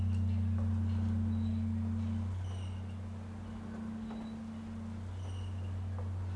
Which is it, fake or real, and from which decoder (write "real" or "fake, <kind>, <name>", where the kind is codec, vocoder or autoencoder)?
real